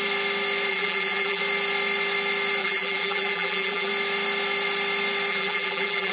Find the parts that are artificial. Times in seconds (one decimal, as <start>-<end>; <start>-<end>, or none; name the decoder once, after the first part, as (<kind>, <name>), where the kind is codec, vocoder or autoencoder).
0.7-1.4 (vocoder, BigVGAN v2); 2.6-3.9; 5.3-6.1